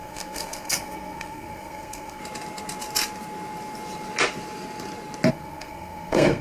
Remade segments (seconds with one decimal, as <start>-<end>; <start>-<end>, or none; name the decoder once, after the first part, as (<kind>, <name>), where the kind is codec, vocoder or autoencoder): 0.0-2.2 (codec, SNAC); 5.3-6.4